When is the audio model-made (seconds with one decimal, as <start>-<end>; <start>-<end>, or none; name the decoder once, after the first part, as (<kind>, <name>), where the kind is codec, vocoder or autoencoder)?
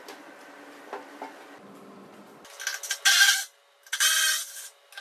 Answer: none